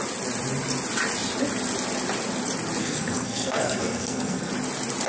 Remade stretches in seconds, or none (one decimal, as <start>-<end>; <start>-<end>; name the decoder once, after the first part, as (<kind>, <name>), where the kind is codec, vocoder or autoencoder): 2.8-4.5 (codec, SNAC)